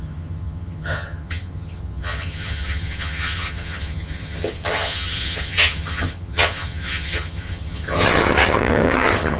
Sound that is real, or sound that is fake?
fake